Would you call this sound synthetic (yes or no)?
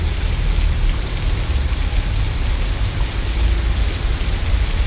no